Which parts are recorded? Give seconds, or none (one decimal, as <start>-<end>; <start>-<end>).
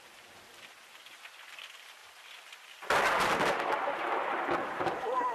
0.0-5.3